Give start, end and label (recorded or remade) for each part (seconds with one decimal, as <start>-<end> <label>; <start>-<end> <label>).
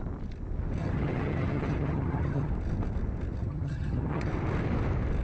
0.0-0.8 recorded; 0.8-2.5 remade; 2.5-3.4 recorded; 3.4-4.3 remade; 4.3-5.2 recorded